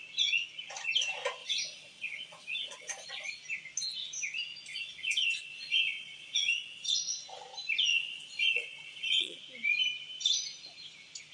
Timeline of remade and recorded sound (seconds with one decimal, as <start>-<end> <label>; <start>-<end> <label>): 0.0-1.4 recorded; 1.4-3.4 remade; 3.4-4.7 recorded; 4.7-6.9 remade; 6.9-7.9 recorded; 7.9-9.4 remade; 9.4-11.3 recorded